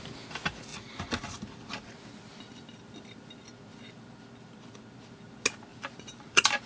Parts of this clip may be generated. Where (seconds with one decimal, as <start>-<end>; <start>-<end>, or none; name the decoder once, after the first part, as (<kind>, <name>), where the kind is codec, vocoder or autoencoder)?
5.7-6.7 (vocoder, BigVGAN v2)